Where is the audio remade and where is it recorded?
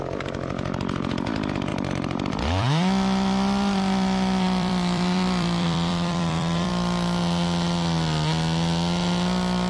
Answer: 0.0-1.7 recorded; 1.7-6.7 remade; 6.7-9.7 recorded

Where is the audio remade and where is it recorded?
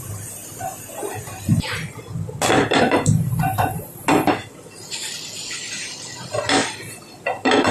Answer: 0.0-7.7 recorded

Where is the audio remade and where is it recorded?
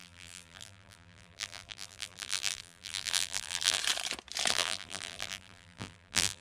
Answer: 0.0-3.8 remade; 3.8-4.5 recorded; 4.5-6.4 remade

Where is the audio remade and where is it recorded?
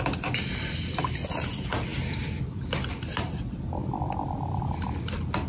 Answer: 0.0-3.8 recorded; 3.8-4.6 remade; 4.6-5.5 recorded